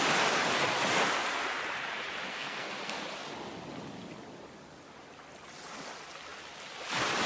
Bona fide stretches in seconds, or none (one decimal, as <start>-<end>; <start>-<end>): 0.0-2.3; 3.0-7.3